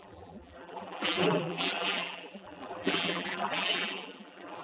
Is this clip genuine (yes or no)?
no